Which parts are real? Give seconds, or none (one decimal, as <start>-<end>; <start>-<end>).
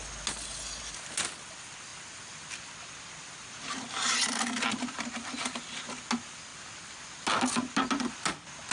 0.0-8.7